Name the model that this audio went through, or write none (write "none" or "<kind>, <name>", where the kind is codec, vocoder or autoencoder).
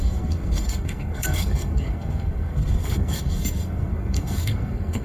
codec, SNAC